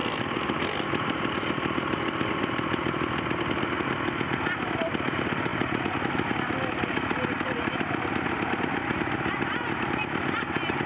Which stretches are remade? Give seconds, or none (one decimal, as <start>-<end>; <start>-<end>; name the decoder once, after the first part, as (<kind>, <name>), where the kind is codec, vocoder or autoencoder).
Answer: none